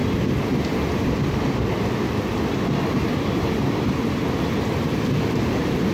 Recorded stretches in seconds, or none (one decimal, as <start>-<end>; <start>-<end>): 0.0-5.9

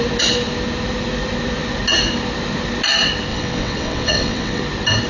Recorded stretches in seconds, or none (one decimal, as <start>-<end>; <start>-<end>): 0.0-3.3; 4.6-5.1

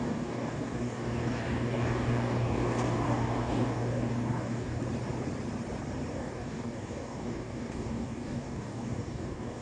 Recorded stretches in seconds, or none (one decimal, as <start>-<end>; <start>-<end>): 4.8-6.1

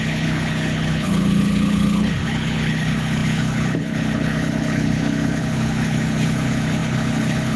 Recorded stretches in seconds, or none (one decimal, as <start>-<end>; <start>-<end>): none

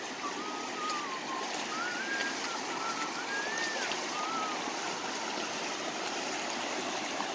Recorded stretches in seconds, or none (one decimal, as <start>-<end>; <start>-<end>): 0.0-7.3

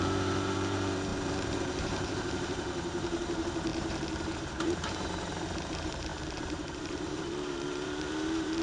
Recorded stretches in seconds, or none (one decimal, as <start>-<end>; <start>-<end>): none

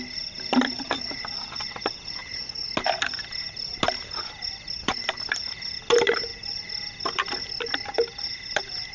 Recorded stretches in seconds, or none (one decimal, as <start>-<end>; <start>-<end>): 0.0-8.9